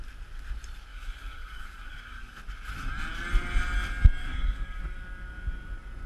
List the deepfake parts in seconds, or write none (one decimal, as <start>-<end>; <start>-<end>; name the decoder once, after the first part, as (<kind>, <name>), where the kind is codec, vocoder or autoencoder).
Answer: 0.9-2.4 (codec, DAC); 4.2-4.8